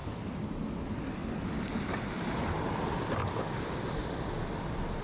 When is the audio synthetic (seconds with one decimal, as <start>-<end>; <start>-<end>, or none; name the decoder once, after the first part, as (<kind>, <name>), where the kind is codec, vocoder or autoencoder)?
0.0-0.7 (vocoder, BigVGAN v2); 1.2-2.8; 3.2-3.9

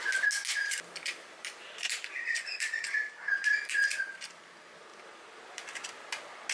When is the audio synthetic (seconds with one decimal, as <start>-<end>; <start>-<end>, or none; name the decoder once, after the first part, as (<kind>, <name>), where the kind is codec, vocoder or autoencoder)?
0.6-3.9 (vocoder, BigVGAN v2); 4.9-6.1

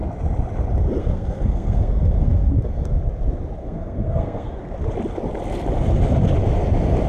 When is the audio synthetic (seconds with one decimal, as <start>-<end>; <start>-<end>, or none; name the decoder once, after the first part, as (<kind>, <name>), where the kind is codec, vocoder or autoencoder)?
1.0-3.0 (codec, SNAC); 3.6-4.5

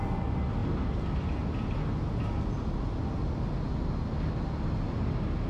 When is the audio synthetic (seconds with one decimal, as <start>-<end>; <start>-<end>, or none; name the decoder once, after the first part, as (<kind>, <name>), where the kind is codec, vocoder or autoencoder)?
none